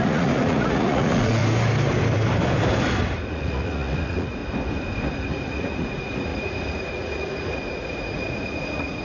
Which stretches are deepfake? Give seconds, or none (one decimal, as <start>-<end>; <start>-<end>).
0.0-1.4; 3.3-4.4; 5.3-9.0